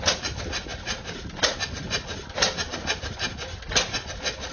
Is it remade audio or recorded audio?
recorded